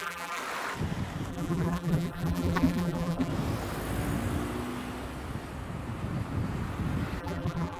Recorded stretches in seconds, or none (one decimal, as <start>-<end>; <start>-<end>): 0.4-1.3; 3.3-7.2